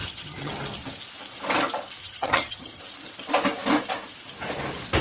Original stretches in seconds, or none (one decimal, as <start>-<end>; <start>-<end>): 0.5-2.0; 2.8-5.0